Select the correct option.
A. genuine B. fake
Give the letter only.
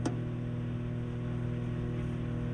A